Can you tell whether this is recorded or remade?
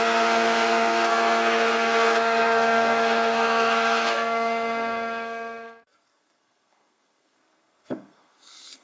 remade